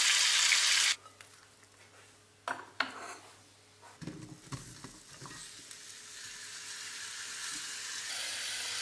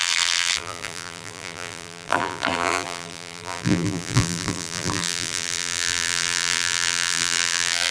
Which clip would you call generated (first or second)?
second